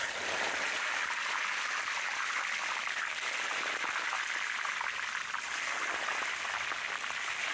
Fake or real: real